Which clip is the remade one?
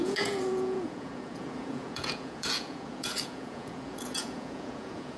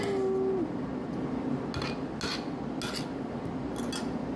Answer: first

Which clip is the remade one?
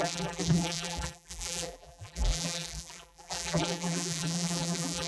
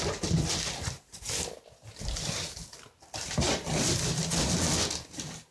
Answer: first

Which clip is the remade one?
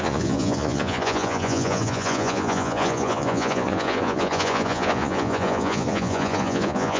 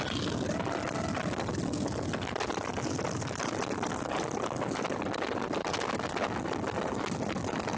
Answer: first